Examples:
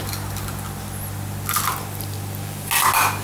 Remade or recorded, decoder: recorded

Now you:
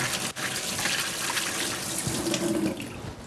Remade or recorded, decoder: recorded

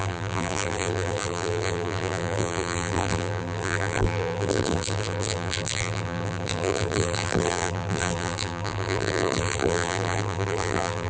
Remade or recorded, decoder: remade, vocoder, BigVGAN v2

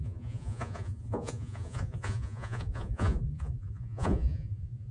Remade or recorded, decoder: remade, vocoder, Vocos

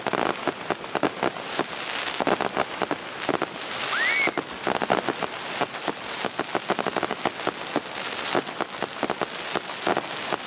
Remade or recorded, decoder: recorded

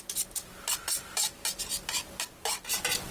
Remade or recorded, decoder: recorded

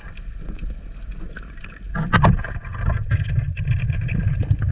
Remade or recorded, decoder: recorded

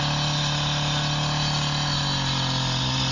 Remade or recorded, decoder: recorded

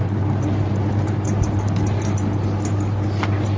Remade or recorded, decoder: recorded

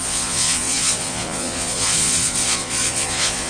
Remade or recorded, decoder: remade, vocoder, Vocos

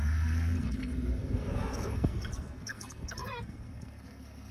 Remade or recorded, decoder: remade, codec, SNAC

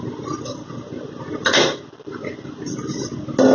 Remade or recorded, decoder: recorded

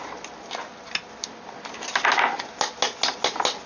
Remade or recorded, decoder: recorded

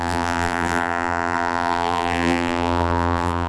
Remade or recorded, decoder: remade, vocoder, BigVGAN v2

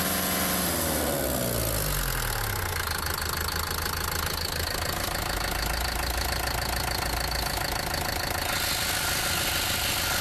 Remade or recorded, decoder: recorded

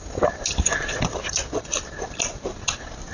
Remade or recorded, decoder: recorded